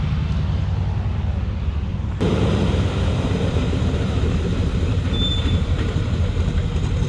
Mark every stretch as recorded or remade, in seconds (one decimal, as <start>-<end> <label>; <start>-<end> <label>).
0.0-1.9 recorded; 1.9-6.2 remade; 6.2-7.1 recorded